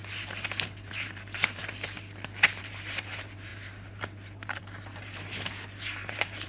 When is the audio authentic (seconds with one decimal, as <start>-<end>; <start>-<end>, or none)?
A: 0.0-0.9; 1.6-2.6